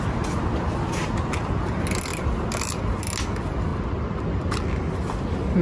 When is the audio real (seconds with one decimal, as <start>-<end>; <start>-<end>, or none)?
0.0-5.6